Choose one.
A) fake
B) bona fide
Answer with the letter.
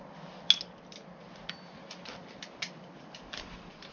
B